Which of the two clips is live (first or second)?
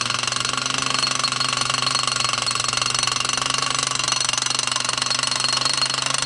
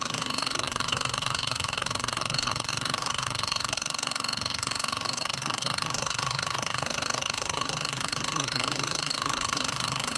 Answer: first